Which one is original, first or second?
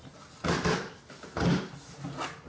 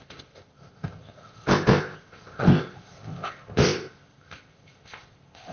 first